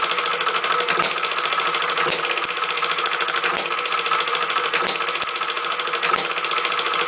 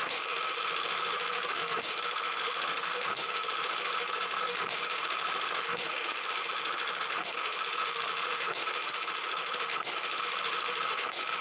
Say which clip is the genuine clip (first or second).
first